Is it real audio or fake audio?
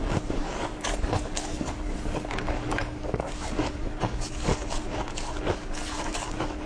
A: fake